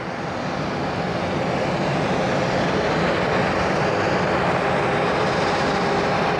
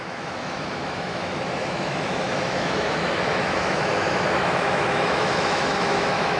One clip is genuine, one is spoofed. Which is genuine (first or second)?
first